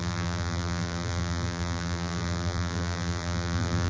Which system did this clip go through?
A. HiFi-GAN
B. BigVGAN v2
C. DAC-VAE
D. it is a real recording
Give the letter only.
B